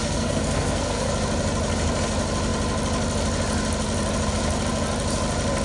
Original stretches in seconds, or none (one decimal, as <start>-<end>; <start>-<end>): 1.1-5.6